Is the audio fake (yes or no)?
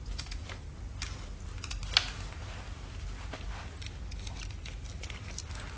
no